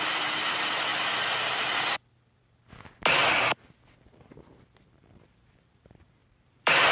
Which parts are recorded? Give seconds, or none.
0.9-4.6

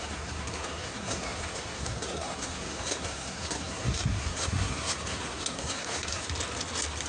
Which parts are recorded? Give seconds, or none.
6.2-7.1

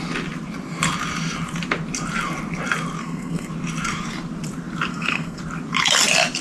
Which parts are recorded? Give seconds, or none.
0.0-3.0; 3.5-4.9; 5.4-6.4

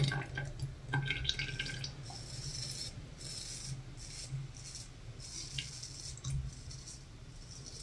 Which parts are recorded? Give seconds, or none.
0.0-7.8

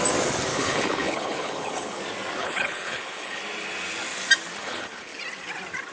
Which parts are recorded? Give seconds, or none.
0.0-0.5; 2.0-2.4; 3.4-4.6; 5.2-5.9

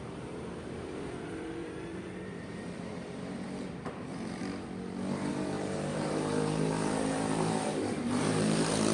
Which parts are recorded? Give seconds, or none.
4.4-5.3